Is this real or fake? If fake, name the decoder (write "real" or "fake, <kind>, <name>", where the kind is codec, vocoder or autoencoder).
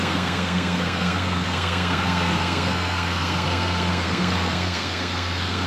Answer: fake, codec, SNAC